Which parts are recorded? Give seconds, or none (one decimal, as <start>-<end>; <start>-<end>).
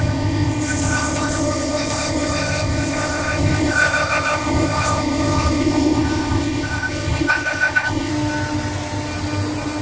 8.1-9.8